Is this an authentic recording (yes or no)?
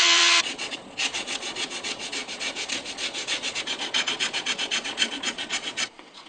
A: no